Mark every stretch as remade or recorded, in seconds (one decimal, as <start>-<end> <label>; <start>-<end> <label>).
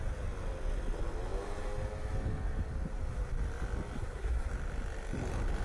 0.0-4.0 recorded; 4.0-4.5 remade; 4.5-5.6 recorded